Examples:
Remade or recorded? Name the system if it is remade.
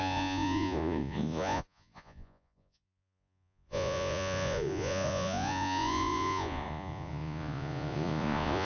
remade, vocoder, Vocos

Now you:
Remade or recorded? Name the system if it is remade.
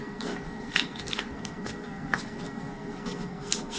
remade, codec, SNAC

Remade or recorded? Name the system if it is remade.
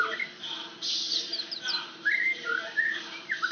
remade, vocoder, BigVGAN v2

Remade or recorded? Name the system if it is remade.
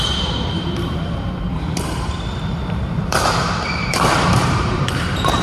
remade, vocoder, BigVGAN v2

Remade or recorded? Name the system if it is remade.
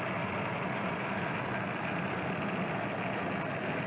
recorded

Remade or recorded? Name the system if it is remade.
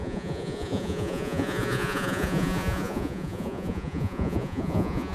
remade, vocoder, Vocos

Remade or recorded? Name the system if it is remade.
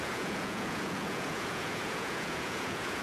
remade, vocoder, Vocos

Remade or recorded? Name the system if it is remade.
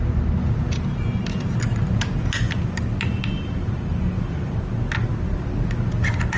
recorded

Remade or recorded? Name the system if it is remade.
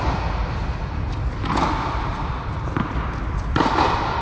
recorded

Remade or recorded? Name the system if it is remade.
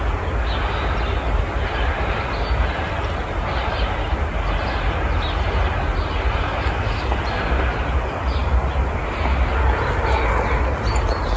recorded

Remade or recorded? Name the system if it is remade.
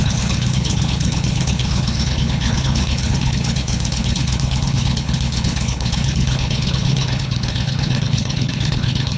remade, codec, HILCodec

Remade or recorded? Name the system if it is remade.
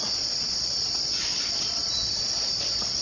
remade, vocoder, Vocos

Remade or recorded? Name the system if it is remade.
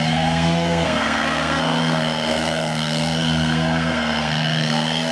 remade, codec, SNAC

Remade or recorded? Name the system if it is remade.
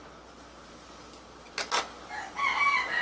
recorded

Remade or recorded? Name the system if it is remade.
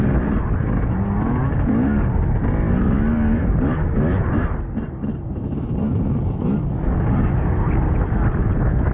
recorded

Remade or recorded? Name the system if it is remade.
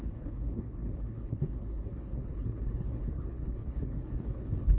remade, codec, HILCodec